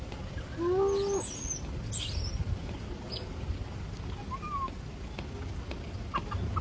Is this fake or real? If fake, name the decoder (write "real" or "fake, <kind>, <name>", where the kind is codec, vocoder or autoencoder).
real